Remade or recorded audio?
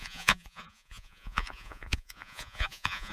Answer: remade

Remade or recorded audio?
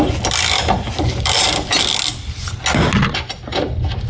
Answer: recorded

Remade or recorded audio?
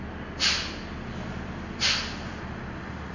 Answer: recorded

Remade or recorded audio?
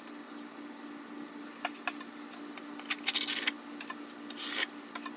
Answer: recorded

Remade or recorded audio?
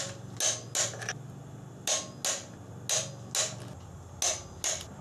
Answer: recorded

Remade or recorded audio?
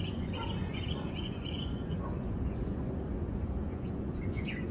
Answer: remade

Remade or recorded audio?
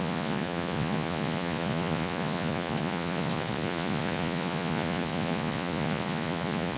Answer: remade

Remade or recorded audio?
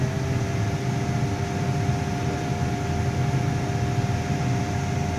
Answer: recorded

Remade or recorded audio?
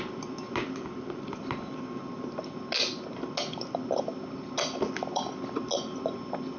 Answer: recorded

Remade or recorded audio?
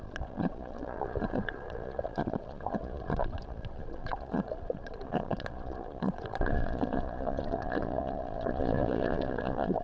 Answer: remade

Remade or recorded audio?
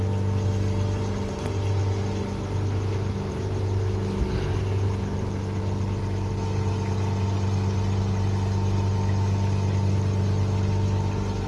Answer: recorded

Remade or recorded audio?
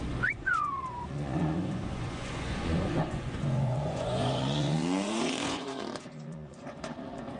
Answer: remade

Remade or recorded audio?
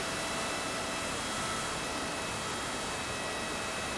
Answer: recorded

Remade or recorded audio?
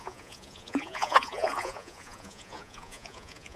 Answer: remade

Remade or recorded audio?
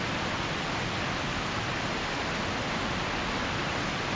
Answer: recorded